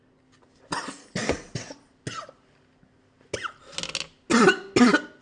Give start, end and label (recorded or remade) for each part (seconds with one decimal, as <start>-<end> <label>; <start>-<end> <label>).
0.0-5.2 recorded